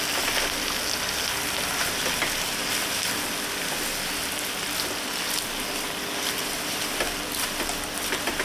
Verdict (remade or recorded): recorded